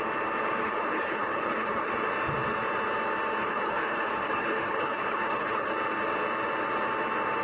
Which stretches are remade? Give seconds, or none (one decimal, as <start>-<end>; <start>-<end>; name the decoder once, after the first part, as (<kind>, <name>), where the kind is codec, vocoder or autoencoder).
0.6-1.9 (codec, HILCodec); 3.4-5.7